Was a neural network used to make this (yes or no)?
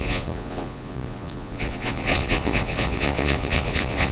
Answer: yes